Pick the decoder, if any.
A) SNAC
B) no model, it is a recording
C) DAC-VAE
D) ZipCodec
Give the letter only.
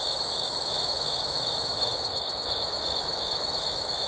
C